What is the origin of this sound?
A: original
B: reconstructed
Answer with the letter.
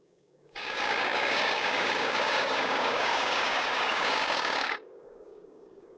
B